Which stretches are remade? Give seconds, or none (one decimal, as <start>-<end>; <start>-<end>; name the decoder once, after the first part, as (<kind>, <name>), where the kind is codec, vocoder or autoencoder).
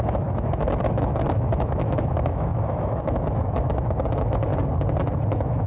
0.0-4.5 (autoencoder, DAC-VAE); 5.3-5.7